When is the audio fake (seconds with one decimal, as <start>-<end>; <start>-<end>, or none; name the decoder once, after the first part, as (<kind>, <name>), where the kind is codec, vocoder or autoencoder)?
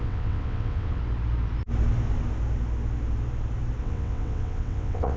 0.0-1.0 (vocoder, WaveNeXt); 3.8-5.2